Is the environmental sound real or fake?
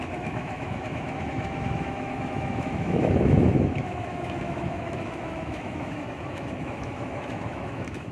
fake